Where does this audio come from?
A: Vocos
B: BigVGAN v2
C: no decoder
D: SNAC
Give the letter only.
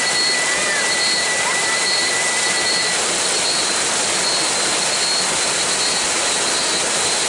C